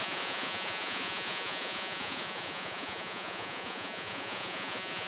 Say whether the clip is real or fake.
fake